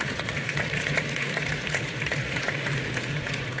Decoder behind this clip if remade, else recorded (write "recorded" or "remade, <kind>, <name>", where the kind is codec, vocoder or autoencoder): remade, vocoder, Vocos